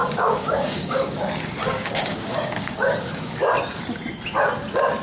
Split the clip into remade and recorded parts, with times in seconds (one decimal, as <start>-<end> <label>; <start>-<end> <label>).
0.0-1.2 remade; 1.2-1.6 recorded; 1.6-3.5 remade; 3.5-5.0 recorded